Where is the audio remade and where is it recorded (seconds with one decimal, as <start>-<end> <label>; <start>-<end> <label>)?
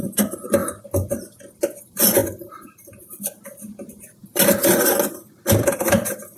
0.0-6.4 recorded